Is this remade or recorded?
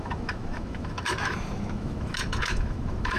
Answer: remade